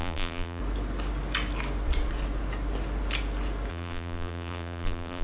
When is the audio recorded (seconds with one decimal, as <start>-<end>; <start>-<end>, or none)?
0.6-3.7